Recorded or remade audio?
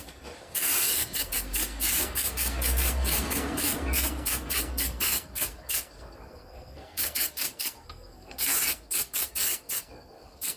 remade